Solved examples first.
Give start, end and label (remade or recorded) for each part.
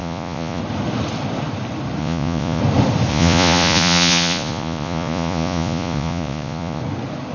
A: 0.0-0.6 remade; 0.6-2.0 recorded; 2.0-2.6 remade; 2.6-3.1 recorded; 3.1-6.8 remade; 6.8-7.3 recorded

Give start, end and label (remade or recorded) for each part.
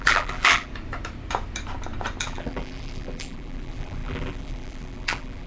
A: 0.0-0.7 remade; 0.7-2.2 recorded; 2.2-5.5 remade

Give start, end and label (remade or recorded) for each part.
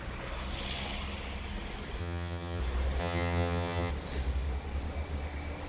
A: 0.0-2.0 recorded; 2.0-2.6 remade; 2.6-3.0 recorded; 3.0-3.9 remade; 3.9-5.7 recorded